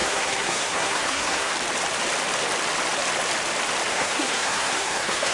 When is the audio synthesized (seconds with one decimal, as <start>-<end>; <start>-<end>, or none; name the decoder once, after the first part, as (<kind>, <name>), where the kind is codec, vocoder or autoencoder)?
0.0-1.5 (codec, SNAC); 3.9-5.3